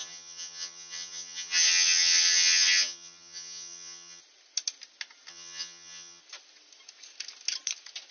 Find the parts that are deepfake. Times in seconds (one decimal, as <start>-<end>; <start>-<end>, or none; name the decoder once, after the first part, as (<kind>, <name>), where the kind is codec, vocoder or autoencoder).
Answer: 0.0-4.2 (vocoder, HiFi-GAN); 5.3-6.2